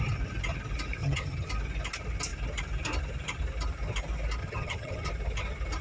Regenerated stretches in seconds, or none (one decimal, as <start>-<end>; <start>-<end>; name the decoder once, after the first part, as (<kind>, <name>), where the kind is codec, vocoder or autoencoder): 1.0-1.5 (vocoder, HiFi-GAN); 4.4-5.1